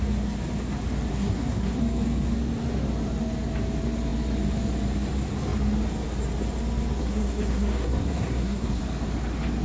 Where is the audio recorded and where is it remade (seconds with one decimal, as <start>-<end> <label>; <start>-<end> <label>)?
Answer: 0.0-1.1 recorded; 1.1-1.8 remade; 1.8-7.0 recorded; 7.0-8.8 remade; 8.8-9.6 recorded